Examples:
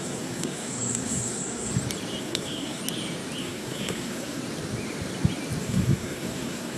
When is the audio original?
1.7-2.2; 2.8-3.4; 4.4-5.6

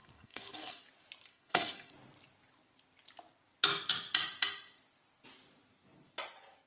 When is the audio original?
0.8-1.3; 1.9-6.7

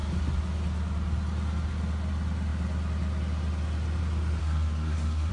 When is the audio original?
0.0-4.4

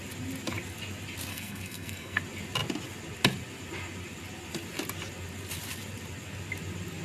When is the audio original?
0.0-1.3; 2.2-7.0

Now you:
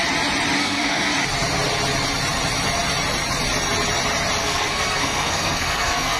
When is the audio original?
0.0-0.6; 1.1-4.4

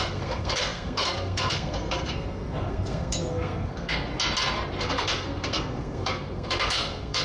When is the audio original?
4.1-4.8

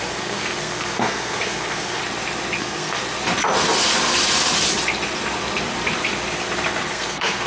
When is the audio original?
2.0-2.6; 3.0-6.9